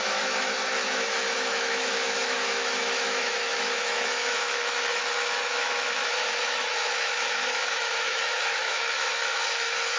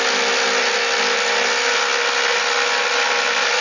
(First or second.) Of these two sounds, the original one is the second